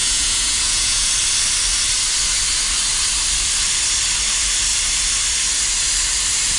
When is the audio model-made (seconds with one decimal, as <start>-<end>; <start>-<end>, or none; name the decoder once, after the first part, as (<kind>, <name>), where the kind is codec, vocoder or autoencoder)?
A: 0.0-1.1 (vocoder, Vocos)